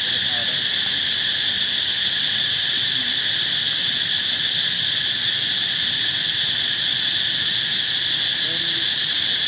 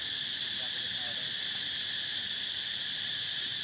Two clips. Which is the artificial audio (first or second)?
second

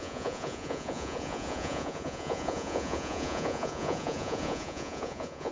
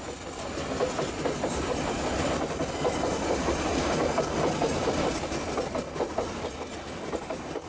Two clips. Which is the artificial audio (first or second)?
first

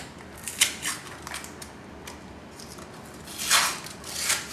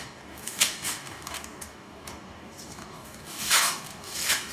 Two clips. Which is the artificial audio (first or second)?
second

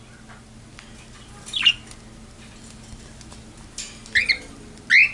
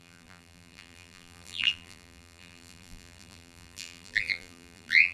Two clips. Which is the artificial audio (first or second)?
second